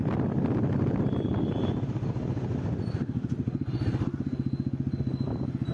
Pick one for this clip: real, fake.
real